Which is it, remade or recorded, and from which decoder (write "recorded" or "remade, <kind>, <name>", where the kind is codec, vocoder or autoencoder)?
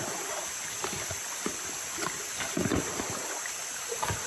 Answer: recorded